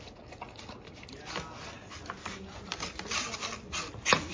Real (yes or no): yes